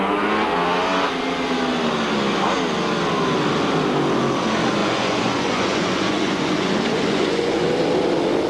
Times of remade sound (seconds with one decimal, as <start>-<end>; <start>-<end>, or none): 4.8-7.7